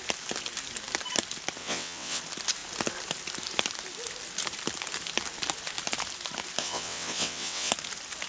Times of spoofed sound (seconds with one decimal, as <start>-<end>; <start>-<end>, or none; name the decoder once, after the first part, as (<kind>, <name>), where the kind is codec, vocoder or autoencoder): 1.6-2.2 (vocoder, WaveNeXt); 6.6-7.7